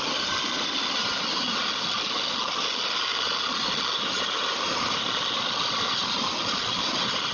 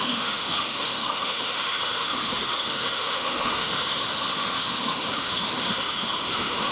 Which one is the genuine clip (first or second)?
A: first